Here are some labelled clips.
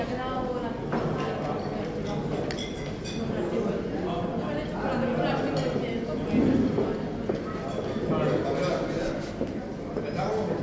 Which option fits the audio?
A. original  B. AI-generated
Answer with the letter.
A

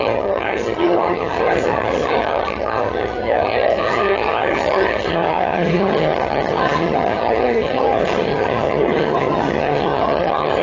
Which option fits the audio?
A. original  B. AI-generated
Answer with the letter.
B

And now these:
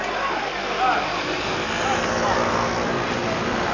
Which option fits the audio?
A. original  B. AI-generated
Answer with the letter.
A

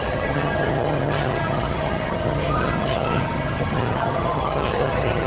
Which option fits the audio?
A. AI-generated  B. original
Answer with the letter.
A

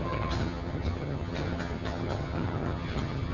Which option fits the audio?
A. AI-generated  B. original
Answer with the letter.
A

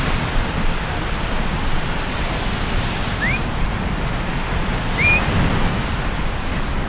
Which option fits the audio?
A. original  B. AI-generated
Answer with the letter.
A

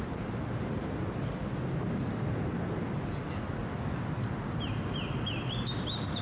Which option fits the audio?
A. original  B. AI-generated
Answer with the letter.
A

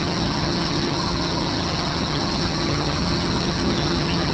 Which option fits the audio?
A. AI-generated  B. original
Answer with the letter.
A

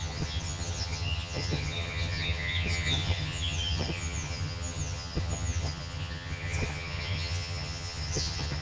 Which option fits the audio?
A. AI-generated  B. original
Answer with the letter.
A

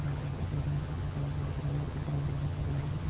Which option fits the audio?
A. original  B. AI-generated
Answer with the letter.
B